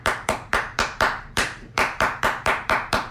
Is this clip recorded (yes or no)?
no